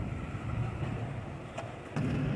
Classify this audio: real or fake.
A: real